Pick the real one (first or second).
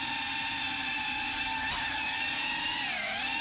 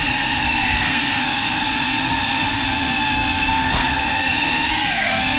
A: first